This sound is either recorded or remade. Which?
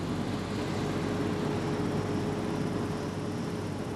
recorded